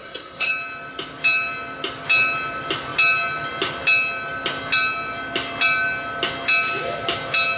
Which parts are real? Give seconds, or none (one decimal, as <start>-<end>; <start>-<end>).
0.5-7.6